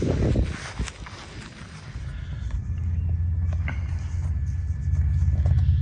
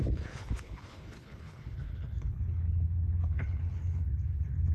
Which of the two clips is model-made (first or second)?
second